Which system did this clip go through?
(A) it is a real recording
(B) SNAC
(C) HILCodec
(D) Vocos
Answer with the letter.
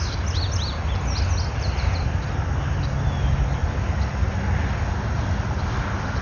A